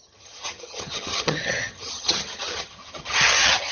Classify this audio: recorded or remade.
remade